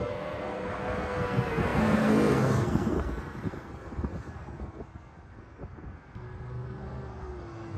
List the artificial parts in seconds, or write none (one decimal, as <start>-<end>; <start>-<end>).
0.0-7.8